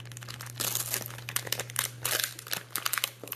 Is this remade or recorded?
recorded